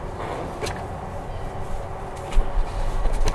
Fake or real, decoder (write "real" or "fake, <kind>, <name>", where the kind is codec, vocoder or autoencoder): fake, vocoder, BigVGAN v2